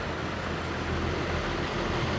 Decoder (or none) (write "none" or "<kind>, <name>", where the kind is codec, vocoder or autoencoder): none